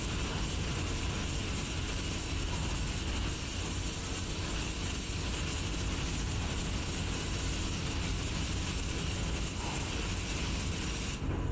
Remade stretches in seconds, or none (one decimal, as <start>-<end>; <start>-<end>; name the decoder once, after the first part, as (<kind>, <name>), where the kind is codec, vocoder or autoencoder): none

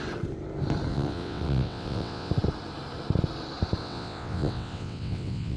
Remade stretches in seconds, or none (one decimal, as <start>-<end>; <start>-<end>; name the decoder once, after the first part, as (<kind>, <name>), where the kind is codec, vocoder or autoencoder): 0.9-2.3 (vocoder, WaveNeXt); 3.8-5.6

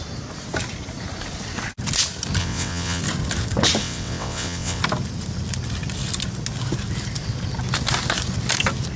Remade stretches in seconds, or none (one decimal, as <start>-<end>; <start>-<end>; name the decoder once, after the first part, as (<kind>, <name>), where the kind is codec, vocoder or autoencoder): 2.4-3.0 (vocoder, WaveNeXt); 3.8-4.8

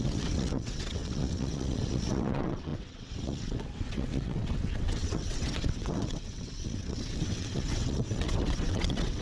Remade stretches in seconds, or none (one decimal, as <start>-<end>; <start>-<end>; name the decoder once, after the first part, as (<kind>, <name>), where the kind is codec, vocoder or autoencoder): 0.0-9.2 (vocoder, WaveNeXt)

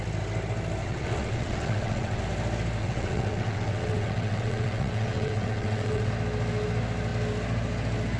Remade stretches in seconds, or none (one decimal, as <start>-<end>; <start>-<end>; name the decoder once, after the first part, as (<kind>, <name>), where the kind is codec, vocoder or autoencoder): 0.8-2.2 (vocoder, WaveNeXt); 2.8-6.1